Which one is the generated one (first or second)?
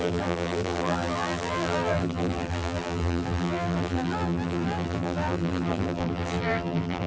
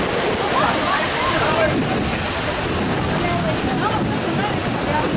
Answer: first